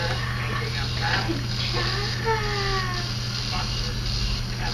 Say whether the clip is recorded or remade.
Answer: recorded